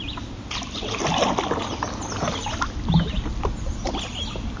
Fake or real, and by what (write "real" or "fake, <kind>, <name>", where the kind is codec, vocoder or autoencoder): real